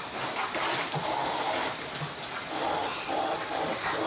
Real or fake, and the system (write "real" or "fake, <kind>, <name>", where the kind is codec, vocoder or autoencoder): real